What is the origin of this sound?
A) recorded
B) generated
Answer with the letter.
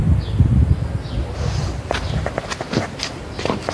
A